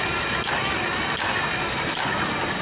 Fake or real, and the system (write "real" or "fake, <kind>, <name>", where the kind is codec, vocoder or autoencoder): real